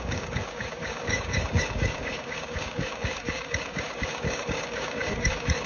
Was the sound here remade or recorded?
remade